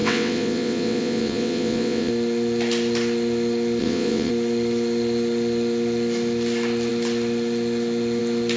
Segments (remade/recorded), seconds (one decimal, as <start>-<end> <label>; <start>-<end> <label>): 0.0-2.1 remade; 2.1-3.8 recorded; 3.8-4.3 remade; 4.3-8.6 recorded